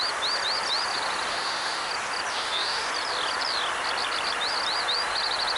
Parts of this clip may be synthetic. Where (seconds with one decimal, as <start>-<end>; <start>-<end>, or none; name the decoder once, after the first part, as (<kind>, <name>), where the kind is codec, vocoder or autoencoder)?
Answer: 1.3-1.9 (autoencoder, DAC-VAE); 2.3-2.9